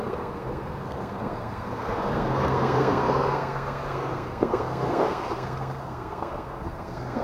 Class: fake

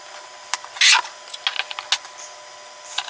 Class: real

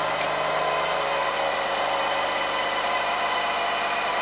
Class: real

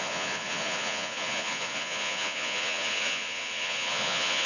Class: fake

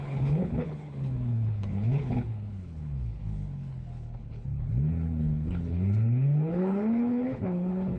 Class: fake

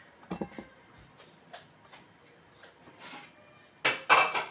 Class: real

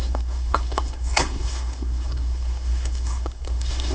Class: fake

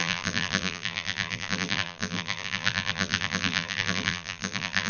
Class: fake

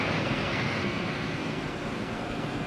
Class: fake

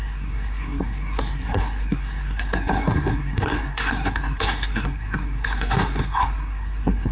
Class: fake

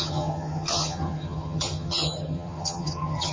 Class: fake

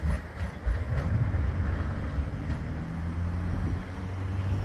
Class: real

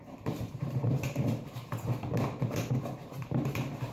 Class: fake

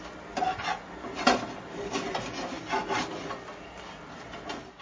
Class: real